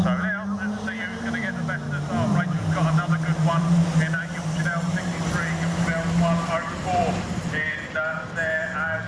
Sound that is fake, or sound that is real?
real